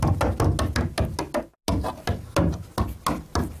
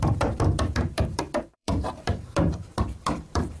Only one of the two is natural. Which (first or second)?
first